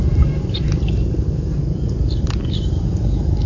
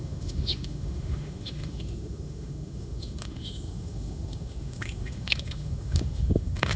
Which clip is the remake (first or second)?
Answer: second